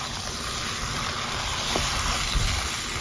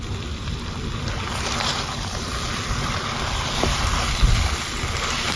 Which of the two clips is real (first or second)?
first